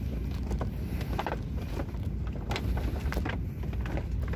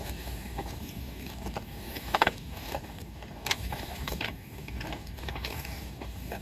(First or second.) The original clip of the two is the first